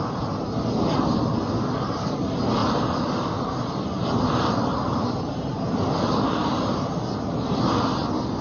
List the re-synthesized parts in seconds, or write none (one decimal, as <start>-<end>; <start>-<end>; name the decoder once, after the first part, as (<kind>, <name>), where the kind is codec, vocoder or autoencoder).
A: 2.6-6.8 (vocoder, BigVGAN v2)